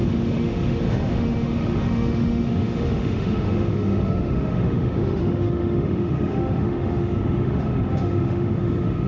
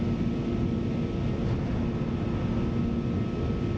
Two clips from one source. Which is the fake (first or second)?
first